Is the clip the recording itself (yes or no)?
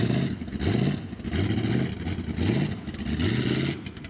yes